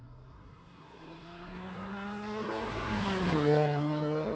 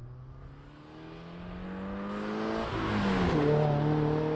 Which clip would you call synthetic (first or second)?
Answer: first